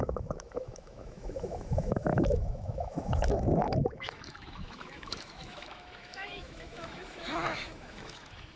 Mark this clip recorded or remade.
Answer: remade